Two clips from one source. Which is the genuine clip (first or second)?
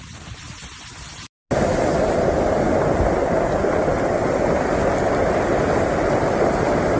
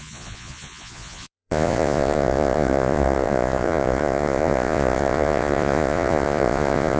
first